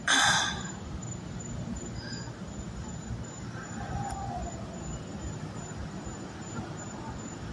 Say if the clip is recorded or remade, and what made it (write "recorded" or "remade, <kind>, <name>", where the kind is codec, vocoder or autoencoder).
recorded